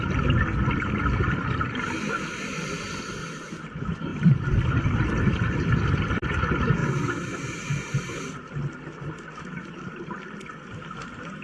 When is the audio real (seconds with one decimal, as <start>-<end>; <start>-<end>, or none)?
0.0-11.4